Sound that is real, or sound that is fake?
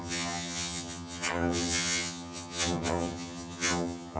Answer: fake